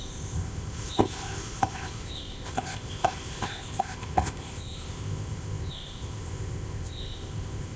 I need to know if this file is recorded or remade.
remade